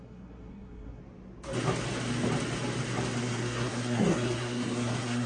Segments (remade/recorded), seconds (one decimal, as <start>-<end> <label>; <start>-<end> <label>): 0.0-1.0 remade; 1.0-3.2 recorded; 3.2-5.3 remade